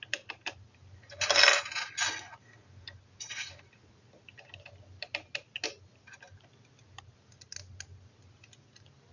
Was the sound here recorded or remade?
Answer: recorded